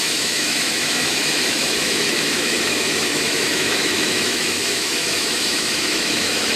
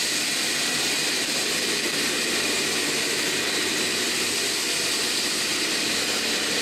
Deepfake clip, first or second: first